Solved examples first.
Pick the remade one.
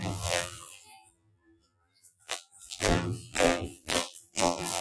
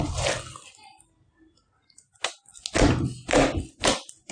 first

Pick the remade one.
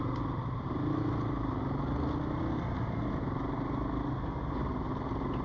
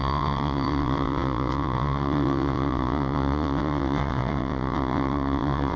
second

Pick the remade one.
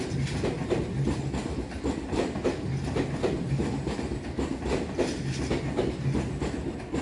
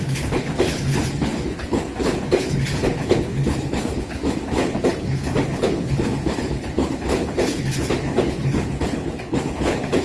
second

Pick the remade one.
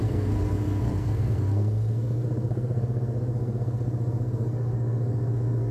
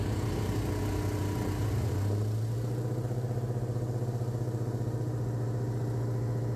first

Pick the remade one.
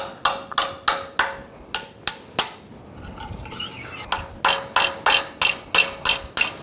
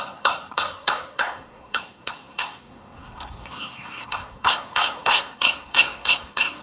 second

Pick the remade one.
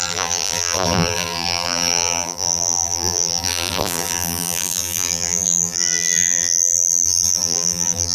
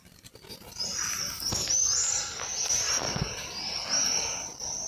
first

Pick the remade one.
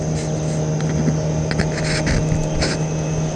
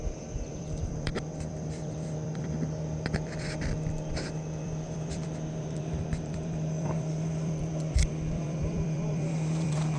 second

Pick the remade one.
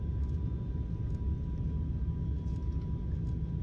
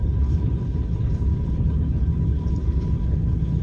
second